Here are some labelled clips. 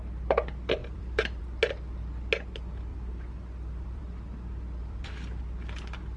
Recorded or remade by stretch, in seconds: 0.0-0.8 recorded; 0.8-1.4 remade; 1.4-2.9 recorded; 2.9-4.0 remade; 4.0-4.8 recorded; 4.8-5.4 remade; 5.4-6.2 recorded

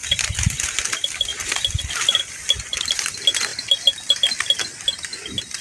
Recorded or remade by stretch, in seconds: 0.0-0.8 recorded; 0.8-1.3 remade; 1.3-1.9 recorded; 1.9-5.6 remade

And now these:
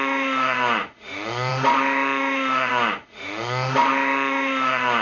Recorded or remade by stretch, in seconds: 0.0-5.0 remade

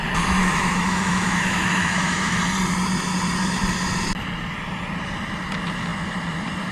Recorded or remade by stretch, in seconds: 0.0-0.4 recorded; 0.4-2.4 remade; 2.4-6.7 recorded

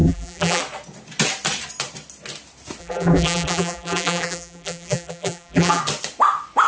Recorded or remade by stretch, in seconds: 0.0-0.6 remade; 0.6-2.8 recorded; 2.8-5.8 remade; 5.8-6.7 recorded

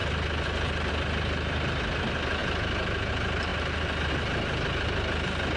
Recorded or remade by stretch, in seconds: 0.0-5.6 recorded

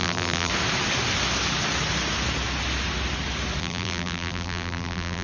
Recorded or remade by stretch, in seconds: 0.0-0.5 remade; 0.5-3.6 recorded; 3.6-5.2 remade

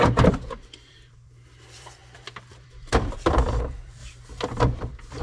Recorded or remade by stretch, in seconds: 0.0-4.0 remade; 4.0-4.6 recorded; 4.6-5.2 remade